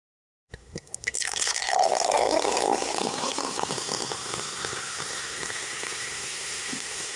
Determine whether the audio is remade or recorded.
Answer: remade